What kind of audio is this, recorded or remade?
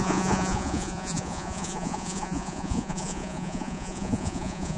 remade